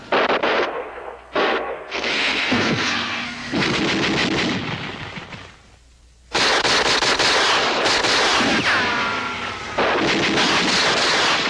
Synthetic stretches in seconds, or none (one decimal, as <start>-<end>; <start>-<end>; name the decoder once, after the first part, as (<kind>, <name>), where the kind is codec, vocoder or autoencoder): 0.4-3.8 (codec, SNAC)